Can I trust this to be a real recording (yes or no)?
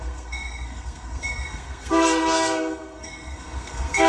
no